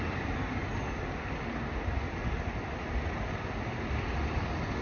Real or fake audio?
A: real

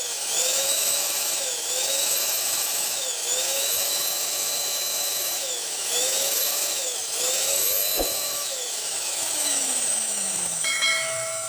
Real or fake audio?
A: fake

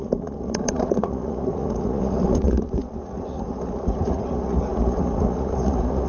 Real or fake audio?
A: fake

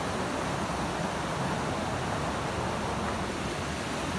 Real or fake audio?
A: real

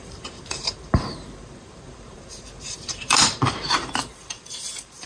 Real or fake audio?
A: fake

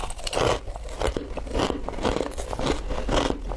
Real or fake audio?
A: real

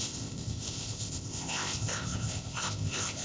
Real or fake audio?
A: fake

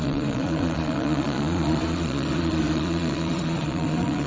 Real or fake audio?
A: fake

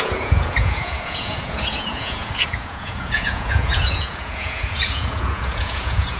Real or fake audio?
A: fake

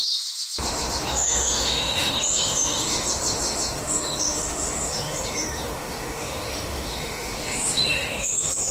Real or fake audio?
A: fake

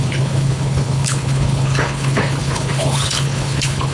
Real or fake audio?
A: fake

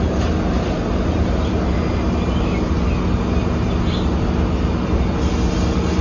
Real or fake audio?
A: real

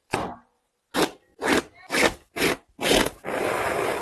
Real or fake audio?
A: real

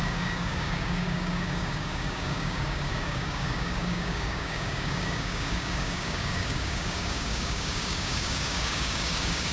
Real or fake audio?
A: fake